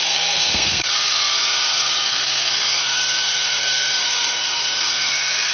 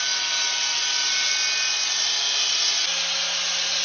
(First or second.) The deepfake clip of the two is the first